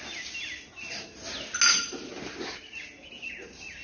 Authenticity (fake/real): real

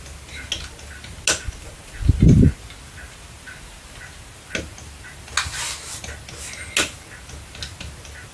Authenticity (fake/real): real